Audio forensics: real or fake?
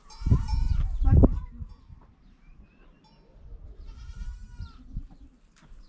real